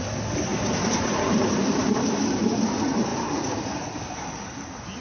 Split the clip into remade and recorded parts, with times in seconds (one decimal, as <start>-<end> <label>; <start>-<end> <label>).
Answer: 0.0-0.5 recorded; 0.5-1.9 remade; 1.9-5.0 recorded